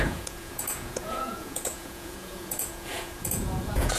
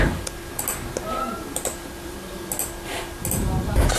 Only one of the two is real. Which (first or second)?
second